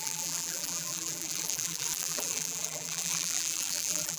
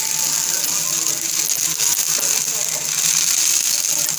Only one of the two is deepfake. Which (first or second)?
first